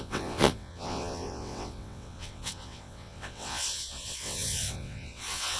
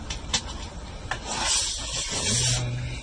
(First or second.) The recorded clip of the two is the second